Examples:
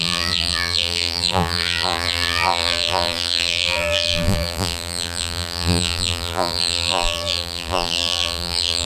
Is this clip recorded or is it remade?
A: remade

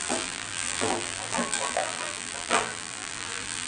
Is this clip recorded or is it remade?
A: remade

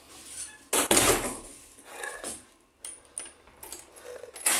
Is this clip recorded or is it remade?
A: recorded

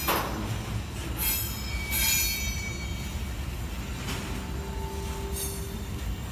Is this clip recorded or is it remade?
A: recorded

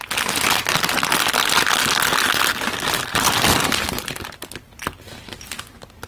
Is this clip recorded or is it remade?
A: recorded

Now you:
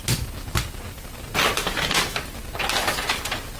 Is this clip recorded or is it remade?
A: recorded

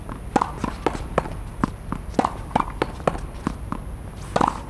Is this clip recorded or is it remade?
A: recorded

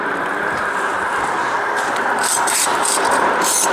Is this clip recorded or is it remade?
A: remade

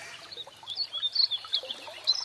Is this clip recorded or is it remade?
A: remade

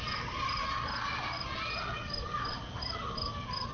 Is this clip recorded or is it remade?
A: remade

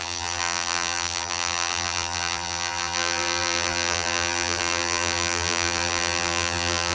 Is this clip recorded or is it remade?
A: remade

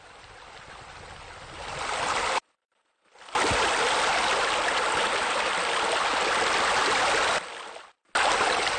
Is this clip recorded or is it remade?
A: recorded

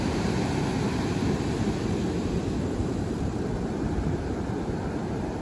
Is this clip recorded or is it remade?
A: remade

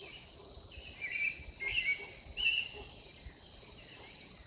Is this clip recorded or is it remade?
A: recorded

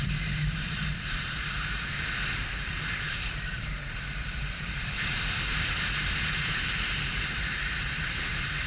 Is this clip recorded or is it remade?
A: remade